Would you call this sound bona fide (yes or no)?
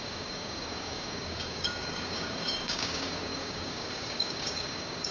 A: no